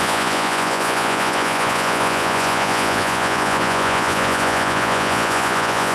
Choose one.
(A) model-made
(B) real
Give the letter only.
A